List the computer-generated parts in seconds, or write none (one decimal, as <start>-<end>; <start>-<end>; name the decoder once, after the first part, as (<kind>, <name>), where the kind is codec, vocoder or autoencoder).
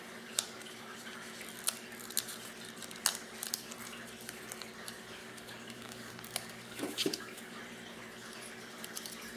5.2-7.6 (codec, DAC)